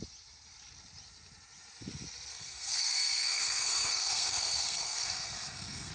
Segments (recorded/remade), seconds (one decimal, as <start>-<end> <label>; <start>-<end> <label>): 0.0-2.3 recorded; 2.3-5.9 remade